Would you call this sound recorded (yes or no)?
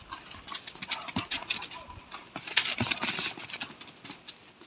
yes